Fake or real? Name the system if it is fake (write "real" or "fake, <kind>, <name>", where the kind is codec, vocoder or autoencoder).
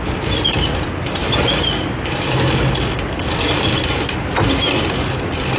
real